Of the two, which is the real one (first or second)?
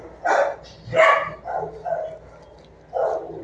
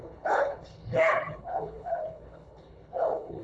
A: first